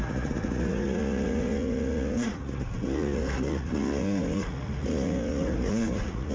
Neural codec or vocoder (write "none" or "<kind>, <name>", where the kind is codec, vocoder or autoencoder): vocoder, Vocos